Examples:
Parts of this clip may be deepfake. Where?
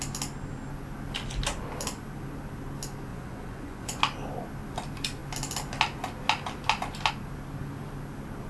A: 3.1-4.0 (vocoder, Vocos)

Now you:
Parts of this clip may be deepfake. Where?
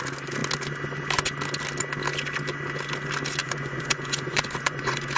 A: 3.4-5.2 (vocoder, Vocos)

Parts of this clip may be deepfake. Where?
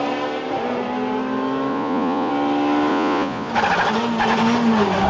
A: 1.7-2.3 (vocoder, Vocos); 2.9-3.5